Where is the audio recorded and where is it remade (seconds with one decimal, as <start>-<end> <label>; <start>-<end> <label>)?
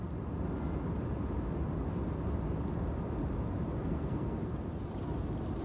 0.0-3.8 recorded; 3.8-4.5 remade; 4.5-5.6 recorded